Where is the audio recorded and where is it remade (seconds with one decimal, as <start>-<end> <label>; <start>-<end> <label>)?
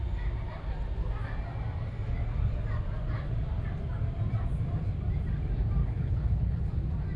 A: 0.0-5.8 recorded; 5.8-6.6 remade; 6.6-7.2 recorded